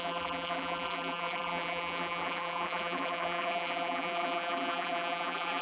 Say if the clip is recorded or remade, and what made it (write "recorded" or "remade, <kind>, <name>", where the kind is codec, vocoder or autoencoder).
remade, vocoder, BigVGAN v2